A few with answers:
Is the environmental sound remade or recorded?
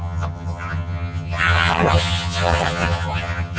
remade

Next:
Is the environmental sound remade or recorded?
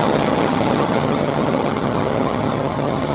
remade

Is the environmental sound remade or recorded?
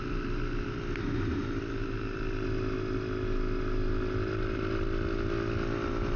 recorded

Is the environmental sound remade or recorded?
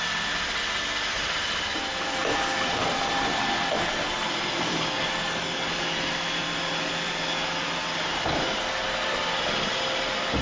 recorded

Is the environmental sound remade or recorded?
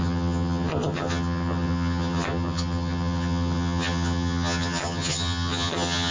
remade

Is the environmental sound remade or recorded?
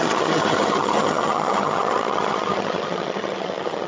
remade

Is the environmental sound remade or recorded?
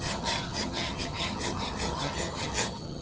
remade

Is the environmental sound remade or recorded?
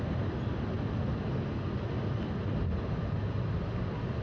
recorded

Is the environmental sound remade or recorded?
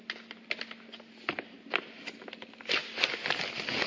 recorded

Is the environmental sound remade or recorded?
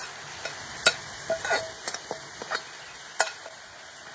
recorded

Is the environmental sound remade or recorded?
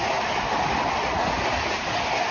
recorded